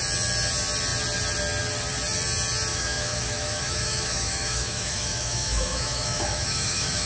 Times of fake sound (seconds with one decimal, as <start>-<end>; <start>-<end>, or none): 2.7-7.1